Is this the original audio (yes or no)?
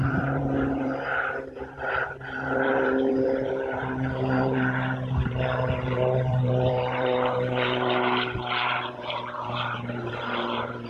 no